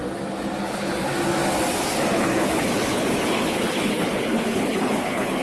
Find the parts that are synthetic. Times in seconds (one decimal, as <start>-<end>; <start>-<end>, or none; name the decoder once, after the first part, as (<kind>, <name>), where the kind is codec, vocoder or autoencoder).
0.6-1.1 (codec, HILCodec); 2.1-5.4